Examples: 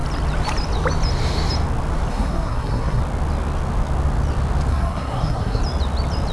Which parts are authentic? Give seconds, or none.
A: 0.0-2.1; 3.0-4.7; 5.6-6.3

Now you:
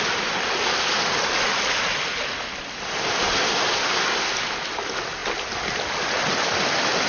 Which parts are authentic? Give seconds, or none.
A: 0.0-7.1

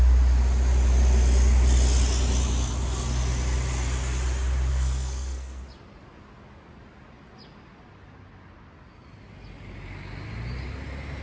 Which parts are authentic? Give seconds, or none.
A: 0.0-4.7; 5.6-11.2

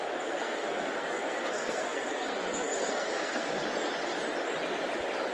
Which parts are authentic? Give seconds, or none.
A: 3.6-5.3

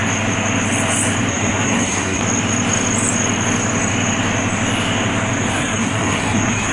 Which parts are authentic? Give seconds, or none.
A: 0.0-1.3; 2.2-5.5

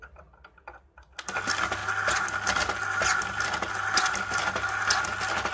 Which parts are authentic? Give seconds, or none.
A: 0.0-5.5